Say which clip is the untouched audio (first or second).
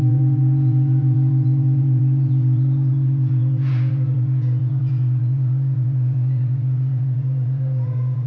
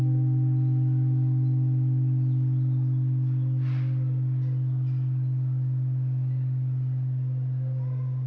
second